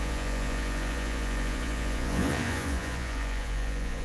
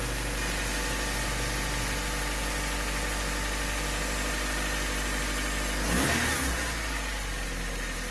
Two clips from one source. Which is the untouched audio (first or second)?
second